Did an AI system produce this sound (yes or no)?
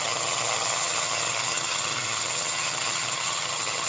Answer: yes